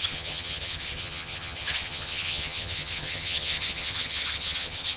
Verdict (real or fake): fake